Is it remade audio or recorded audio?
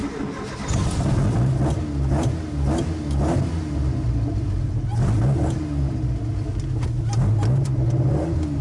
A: recorded